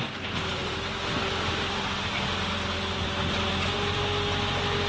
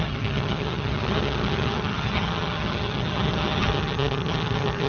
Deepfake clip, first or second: second